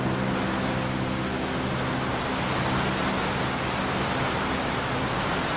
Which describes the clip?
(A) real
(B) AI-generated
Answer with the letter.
A